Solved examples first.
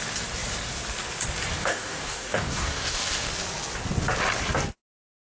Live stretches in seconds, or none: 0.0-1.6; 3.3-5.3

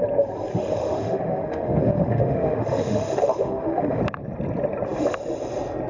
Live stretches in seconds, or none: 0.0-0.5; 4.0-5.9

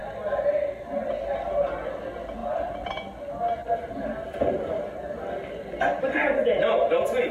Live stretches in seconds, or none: 0.0-7.3

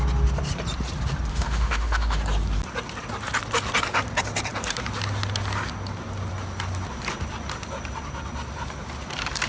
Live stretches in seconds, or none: 0.0-1.3; 2.2-9.5